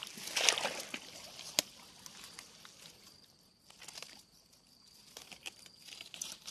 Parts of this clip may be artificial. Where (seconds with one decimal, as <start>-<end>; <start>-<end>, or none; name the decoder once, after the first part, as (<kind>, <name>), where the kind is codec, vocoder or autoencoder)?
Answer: 4.0-6.5 (vocoder, BigVGAN v2)